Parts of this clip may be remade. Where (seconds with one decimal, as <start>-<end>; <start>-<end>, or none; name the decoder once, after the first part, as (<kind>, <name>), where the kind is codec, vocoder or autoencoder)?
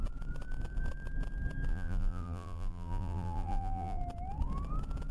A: 1.7-4.0 (vocoder, BigVGAN v2)